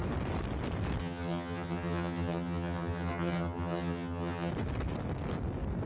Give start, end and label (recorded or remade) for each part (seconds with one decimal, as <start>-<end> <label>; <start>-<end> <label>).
0.0-1.0 recorded; 1.0-4.5 remade; 4.5-5.9 recorded